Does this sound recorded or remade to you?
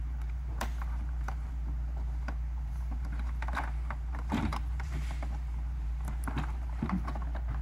remade